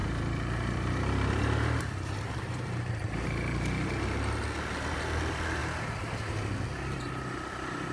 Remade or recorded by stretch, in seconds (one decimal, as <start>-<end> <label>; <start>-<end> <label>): 0.0-3.9 remade; 3.9-7.9 recorded